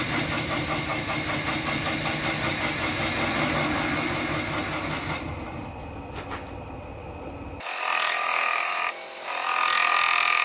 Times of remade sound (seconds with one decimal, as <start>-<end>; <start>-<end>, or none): none